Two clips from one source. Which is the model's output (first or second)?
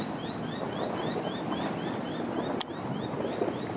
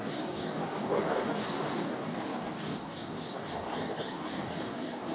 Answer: second